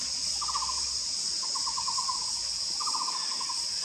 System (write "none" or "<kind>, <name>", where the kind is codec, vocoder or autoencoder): none